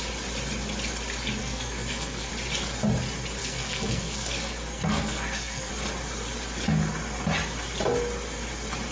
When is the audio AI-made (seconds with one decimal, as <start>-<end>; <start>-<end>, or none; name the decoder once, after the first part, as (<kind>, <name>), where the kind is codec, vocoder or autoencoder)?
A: 1.4-2.3 (codec, SNAC); 3.4-5.7